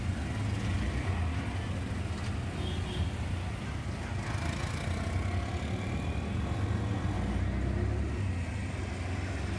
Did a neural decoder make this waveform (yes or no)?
no